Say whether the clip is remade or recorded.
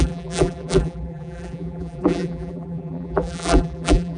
remade